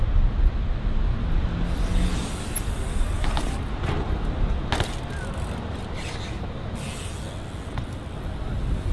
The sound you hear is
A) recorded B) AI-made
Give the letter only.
A